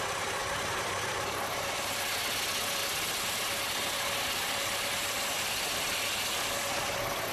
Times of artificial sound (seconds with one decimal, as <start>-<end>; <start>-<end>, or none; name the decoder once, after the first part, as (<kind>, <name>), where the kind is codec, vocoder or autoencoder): none